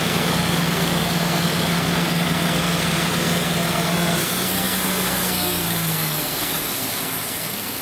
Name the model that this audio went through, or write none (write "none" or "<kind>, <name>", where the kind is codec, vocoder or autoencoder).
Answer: codec, SNAC